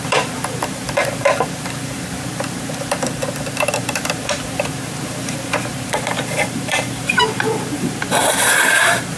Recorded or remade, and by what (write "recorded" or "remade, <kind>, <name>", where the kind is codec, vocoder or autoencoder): remade, vocoder, BigVGAN v2